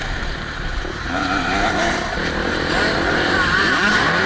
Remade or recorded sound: remade